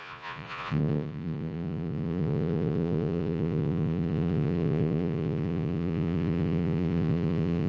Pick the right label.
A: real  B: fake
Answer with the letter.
B